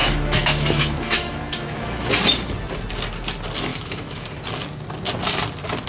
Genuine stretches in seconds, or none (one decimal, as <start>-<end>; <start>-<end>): 2.1-3.7; 4.3-5.9